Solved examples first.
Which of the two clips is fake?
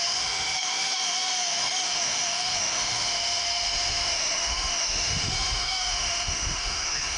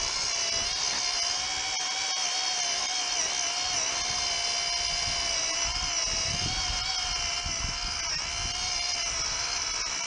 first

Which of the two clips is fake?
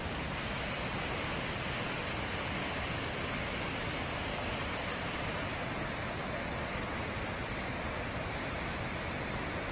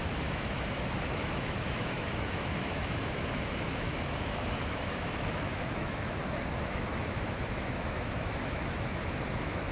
second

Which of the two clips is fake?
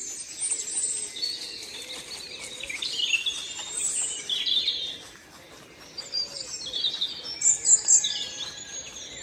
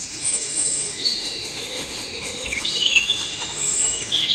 second